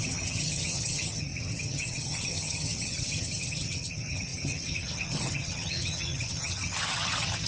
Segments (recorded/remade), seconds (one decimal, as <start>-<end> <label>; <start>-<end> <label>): 0.0-7.5 remade